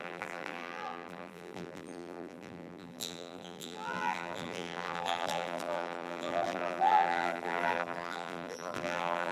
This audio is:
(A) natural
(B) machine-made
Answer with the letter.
B